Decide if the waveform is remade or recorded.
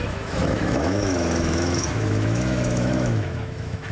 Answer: remade